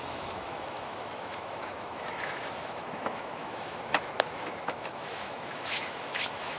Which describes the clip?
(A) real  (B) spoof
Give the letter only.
B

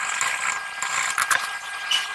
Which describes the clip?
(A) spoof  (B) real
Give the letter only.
B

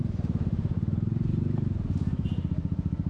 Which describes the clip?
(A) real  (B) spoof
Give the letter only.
B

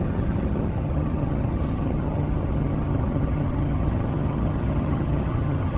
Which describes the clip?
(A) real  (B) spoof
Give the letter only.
B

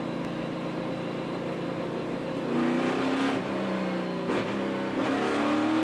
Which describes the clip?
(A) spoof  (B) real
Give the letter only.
B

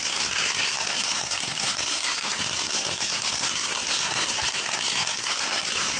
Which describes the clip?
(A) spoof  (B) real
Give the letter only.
A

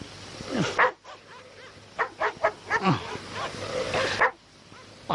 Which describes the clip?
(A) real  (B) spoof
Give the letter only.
A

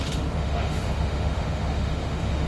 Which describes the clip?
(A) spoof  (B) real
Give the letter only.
A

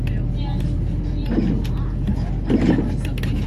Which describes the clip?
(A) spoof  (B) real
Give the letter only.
B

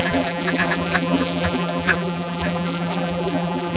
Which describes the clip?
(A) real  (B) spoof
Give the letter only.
B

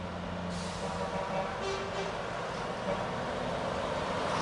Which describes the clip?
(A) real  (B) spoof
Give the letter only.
A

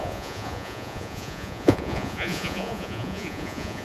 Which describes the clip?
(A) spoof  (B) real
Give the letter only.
A